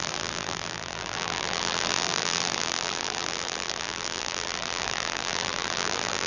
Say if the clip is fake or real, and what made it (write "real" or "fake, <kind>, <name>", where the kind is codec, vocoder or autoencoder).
fake, vocoder, BigVGAN v2